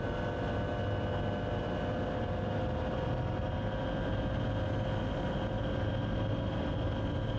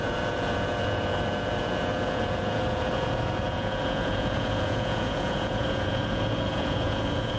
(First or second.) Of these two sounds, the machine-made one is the second